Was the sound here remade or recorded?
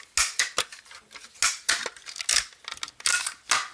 recorded